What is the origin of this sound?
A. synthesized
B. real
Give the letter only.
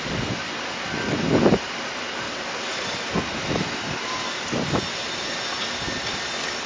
B